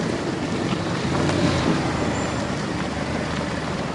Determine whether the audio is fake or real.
fake